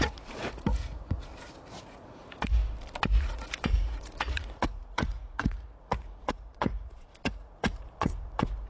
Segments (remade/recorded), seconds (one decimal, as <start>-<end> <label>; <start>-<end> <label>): 0.0-1.3 remade; 1.3-1.8 recorded; 1.8-2.6 remade; 2.6-3.2 recorded; 3.2-8.7 remade